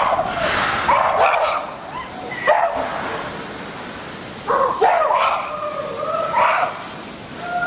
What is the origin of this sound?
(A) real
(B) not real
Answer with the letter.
A